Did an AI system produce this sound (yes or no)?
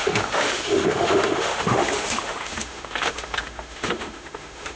yes